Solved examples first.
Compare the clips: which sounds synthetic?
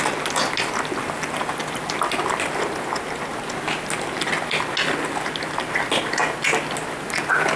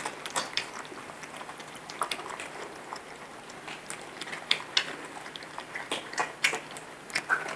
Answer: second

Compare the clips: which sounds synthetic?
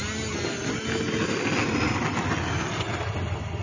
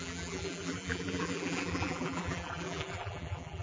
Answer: second